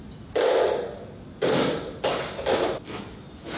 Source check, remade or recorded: recorded